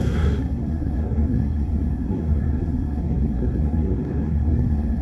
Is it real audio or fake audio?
fake